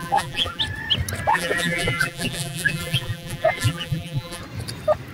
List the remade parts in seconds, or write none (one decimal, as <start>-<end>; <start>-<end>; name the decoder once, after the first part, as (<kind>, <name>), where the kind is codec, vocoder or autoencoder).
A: 0.0-0.6 (vocoder, BigVGAN v2); 1.3-4.4